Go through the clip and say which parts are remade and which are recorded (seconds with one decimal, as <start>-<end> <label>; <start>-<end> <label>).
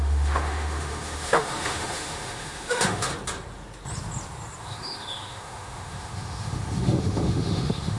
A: 0.0-3.1 remade; 3.1-4.6 recorded; 4.6-8.0 remade